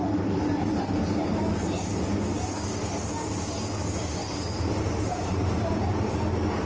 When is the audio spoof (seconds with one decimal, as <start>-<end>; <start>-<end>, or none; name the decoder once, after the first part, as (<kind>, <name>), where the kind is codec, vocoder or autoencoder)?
3.8-5.9 (vocoder, BigVGAN v2)